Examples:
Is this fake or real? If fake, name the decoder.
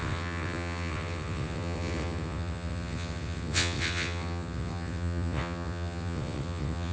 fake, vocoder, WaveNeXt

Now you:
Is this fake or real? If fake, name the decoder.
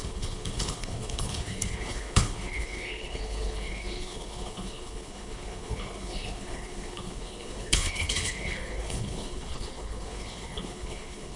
fake, codec, HILCodec